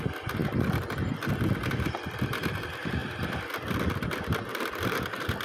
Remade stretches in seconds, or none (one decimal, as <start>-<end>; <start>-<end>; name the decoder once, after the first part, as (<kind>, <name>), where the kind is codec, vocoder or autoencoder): none